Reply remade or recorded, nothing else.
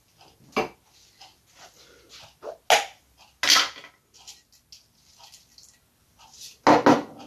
recorded